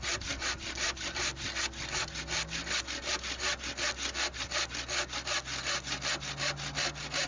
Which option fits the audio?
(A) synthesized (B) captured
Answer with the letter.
B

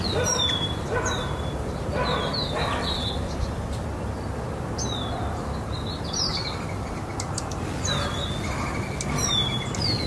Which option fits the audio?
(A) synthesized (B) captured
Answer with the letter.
B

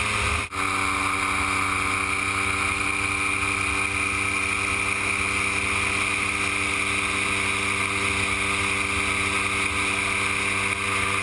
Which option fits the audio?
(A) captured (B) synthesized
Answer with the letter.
A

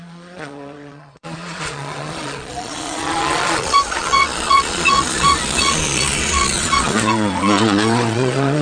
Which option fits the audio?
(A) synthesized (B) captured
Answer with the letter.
A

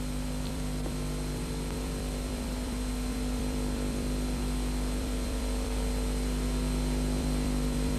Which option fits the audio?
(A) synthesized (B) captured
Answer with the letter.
A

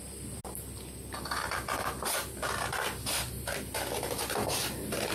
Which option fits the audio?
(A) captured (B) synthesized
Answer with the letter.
A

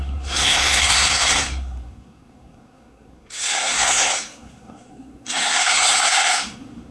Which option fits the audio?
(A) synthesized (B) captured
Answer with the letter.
A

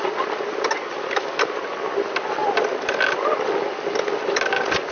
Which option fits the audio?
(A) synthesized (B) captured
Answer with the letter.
B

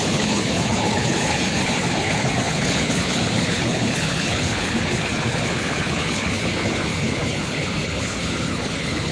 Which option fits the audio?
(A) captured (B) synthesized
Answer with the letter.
B